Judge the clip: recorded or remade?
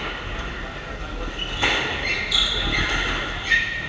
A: recorded